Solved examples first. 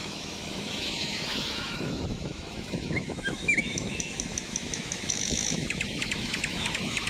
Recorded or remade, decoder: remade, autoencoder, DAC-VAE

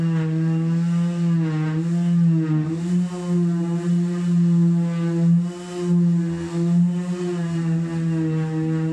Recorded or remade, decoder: recorded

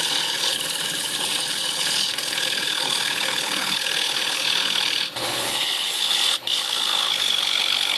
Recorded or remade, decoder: remade, codec, HILCodec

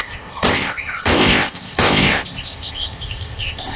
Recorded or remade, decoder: remade, codec, ZipCodec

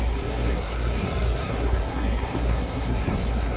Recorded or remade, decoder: remade, codec, SNAC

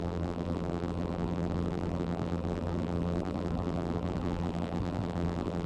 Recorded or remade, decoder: remade, vocoder, BigVGAN v2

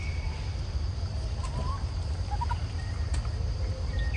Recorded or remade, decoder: recorded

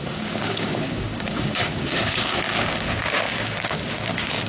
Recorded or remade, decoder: remade, codec, DAC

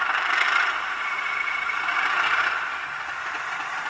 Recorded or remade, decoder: recorded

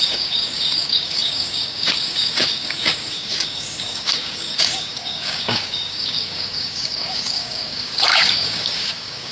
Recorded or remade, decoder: remade, codec, DAC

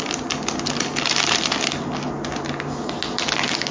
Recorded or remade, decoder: recorded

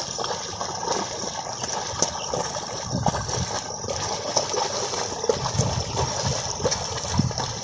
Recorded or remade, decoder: recorded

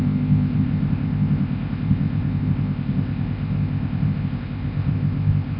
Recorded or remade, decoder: remade, codec, ZipCodec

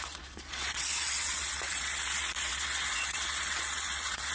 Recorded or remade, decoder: remade, vocoder, Vocos